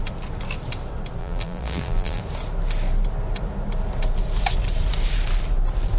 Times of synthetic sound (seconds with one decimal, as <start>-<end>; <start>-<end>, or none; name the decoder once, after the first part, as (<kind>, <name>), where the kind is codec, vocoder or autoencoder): 1.2-2.2 (vocoder, BigVGAN v2)